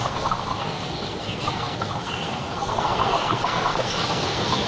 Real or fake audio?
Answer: fake